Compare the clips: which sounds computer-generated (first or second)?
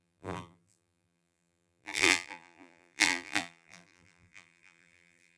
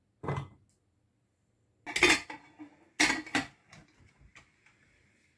first